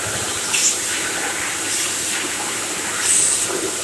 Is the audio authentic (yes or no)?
no